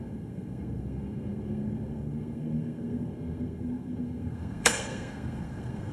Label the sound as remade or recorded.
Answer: remade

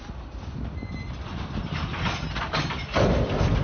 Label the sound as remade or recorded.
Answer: recorded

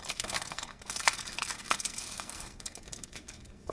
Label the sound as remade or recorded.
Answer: remade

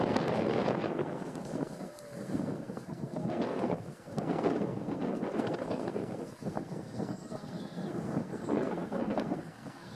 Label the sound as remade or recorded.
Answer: remade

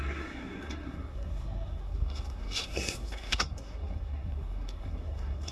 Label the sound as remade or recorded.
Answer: remade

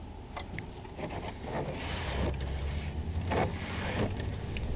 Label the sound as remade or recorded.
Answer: recorded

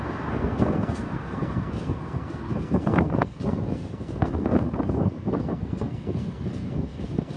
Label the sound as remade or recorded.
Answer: remade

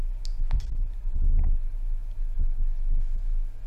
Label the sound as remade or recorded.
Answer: recorded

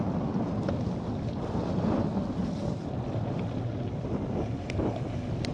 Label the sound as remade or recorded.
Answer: recorded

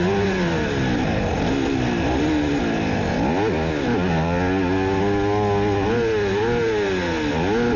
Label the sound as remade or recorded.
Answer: recorded